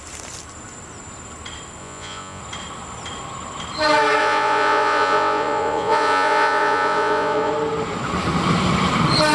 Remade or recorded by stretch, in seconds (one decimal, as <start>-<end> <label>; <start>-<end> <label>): 0.0-1.8 recorded; 1.8-2.4 remade; 2.4-4.2 recorded; 4.2-7.5 remade; 7.5-9.3 recorded